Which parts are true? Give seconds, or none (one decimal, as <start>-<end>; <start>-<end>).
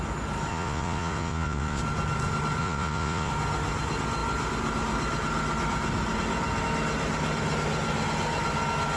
0.0-0.5; 1.8-2.6; 3.3-9.0